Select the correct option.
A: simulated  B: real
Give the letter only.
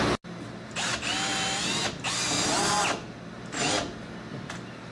B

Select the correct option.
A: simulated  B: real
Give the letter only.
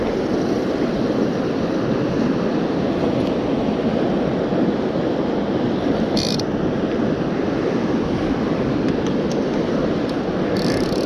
B